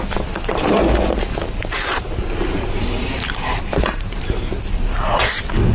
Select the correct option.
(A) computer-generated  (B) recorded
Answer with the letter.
B